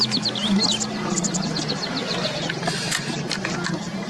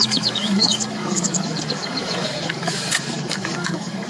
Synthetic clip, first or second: second